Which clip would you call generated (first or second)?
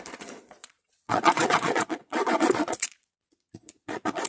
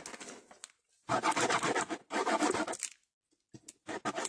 first